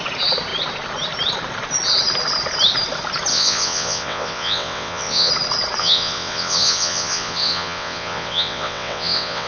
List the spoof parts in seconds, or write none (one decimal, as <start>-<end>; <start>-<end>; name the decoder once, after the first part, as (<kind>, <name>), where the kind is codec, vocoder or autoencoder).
3.3-5.3 (vocoder, WaveNeXt); 5.8-9.5